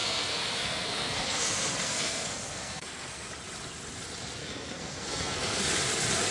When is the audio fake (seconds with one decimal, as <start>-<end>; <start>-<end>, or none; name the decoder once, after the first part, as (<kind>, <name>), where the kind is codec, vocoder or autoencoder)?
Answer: 0.0-3.3 (codec, SNAC); 4.4-5.6